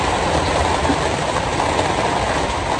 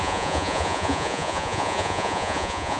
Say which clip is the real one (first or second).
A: first